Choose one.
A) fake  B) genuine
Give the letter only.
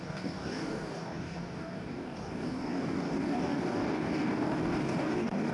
A